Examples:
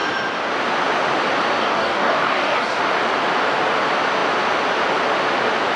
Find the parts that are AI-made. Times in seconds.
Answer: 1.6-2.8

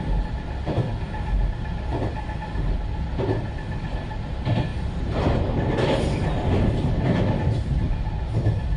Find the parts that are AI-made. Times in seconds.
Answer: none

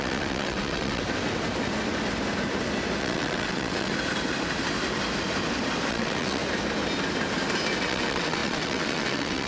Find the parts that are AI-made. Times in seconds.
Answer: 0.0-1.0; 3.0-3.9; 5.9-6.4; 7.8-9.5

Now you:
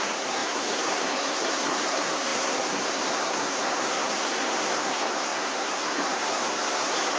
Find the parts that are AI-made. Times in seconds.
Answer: 0.0-7.2

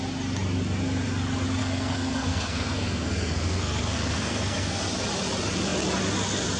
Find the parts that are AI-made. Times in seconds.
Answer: 1.6-4.8